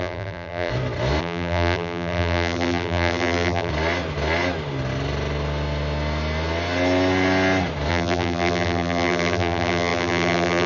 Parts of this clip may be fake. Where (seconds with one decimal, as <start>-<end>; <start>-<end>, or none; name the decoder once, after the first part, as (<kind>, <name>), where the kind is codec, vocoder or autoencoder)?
0.0-0.7 (vocoder, BigVGAN v2); 1.2-3.7; 7.9-10.7